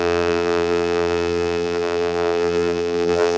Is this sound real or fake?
fake